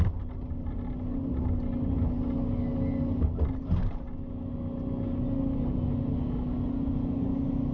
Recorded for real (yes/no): yes